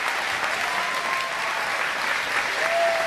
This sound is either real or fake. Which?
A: real